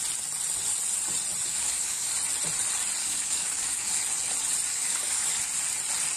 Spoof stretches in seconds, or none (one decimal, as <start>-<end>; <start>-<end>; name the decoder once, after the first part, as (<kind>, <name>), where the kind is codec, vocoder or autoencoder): 1.5-2.1 (codec, DAC); 3.0-4.0; 4.7-5.4